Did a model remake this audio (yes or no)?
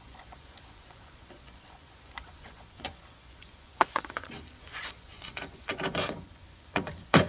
yes